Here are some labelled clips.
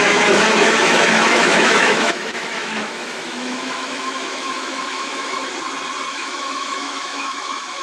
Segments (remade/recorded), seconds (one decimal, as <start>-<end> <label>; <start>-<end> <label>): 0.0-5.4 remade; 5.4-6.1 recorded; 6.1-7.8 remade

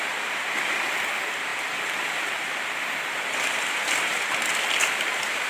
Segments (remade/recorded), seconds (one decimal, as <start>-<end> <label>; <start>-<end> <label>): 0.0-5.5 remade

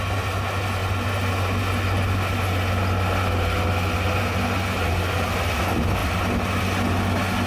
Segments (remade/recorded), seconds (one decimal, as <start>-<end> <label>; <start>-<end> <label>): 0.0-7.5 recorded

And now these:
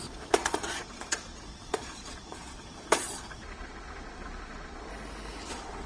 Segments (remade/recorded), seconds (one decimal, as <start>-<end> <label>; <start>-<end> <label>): 0.0-4.9 remade; 4.9-5.4 recorded; 5.4-5.9 remade

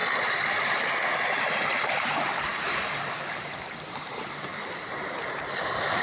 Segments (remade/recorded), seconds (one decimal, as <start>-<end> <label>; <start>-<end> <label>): 0.0-0.8 remade; 0.8-6.0 recorded

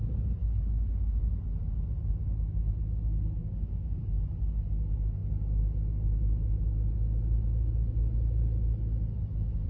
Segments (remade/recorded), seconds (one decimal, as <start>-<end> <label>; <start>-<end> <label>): 0.0-0.4 recorded; 0.4-1.2 remade; 1.2-3.4 recorded; 3.4-4.0 remade; 4.0-9.7 recorded